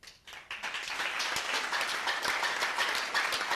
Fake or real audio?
real